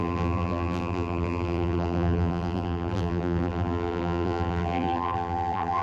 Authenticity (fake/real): fake